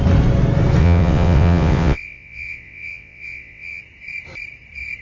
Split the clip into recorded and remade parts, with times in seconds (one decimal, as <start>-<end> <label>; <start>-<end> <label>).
0.0-0.8 recorded; 0.8-3.8 remade; 3.8-5.0 recorded